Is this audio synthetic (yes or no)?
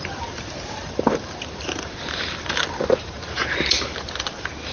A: yes